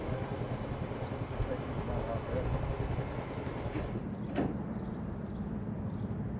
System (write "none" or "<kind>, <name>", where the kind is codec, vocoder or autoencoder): none